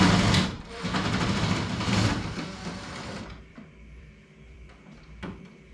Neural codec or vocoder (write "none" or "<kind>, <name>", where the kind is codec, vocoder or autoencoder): vocoder, BigVGAN v2